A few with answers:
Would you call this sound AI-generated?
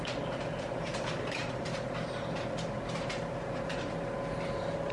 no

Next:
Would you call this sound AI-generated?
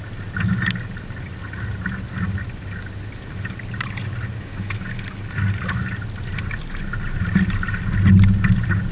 no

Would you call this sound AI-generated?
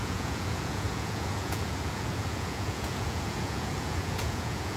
yes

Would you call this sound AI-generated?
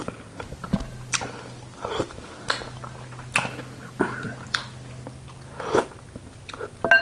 no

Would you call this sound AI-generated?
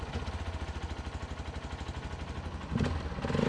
no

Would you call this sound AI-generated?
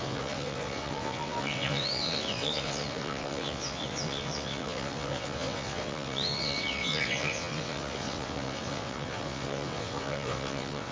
yes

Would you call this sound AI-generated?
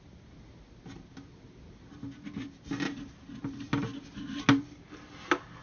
no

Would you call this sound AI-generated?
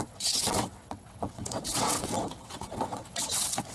yes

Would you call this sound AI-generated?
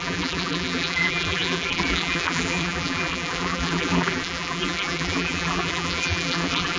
yes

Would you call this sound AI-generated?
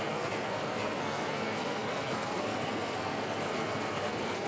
yes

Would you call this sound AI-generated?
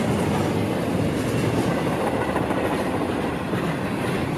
no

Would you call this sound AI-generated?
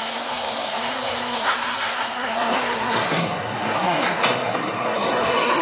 yes